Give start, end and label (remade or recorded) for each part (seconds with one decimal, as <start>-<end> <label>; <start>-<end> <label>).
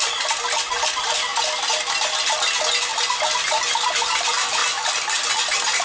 0.0-5.8 recorded